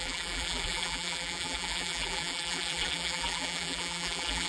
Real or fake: fake